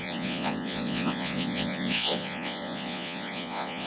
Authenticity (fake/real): fake